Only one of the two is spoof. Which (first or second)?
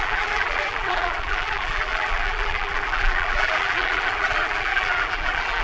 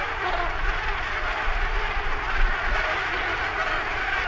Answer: first